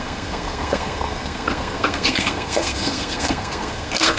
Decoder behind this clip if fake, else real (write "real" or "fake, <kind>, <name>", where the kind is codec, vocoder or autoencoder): fake, codec, SNAC